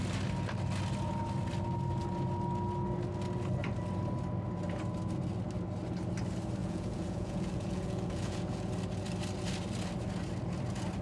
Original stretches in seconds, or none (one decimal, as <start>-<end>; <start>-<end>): 0.0-6.6; 8.7-11.0